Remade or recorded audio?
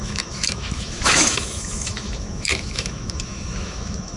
remade